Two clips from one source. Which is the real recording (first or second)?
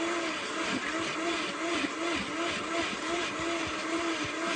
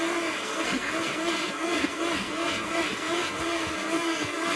first